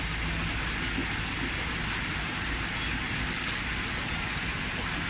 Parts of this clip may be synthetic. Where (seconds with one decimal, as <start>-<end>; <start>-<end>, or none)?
none